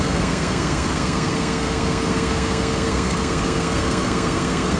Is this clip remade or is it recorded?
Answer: remade